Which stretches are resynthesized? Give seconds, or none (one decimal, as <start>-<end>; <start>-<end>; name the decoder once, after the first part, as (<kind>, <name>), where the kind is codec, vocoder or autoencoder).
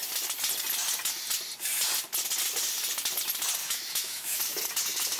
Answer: 3.6-4.4 (autoencoder, DAC-VAE)